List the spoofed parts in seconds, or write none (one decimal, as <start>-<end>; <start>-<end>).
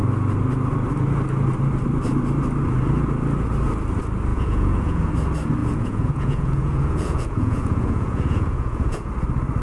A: 4.3-5.1; 5.6-9.1